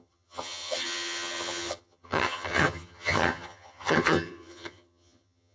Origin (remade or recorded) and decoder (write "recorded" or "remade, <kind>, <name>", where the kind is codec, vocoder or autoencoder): remade, vocoder, HiFi-GAN